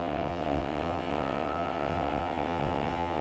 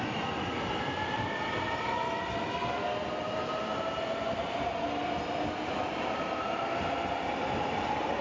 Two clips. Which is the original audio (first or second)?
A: second